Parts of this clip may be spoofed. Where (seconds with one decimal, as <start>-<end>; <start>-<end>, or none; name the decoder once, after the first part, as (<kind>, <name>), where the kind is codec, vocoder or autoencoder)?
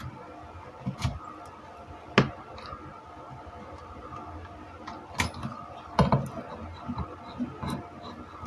none